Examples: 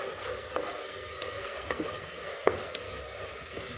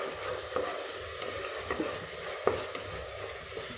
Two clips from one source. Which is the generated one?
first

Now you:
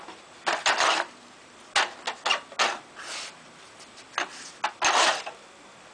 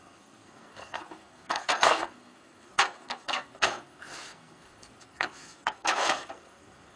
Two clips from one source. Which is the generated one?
second